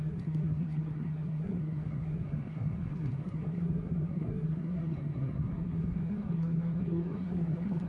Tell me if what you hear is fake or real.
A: fake